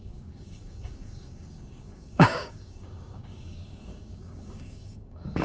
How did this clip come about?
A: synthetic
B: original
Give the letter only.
A